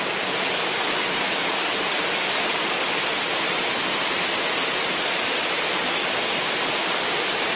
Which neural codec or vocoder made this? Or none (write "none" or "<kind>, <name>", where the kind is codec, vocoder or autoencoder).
none